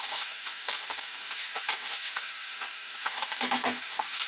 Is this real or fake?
fake